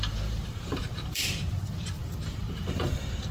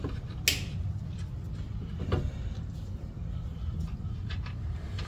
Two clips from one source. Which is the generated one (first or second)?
first